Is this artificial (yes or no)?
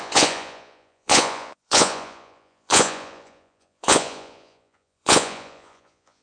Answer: yes